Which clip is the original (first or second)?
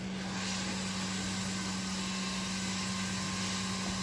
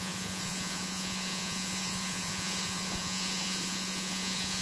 first